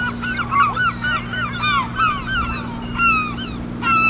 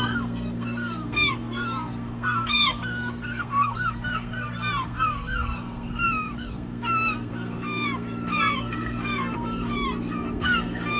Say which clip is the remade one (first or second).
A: second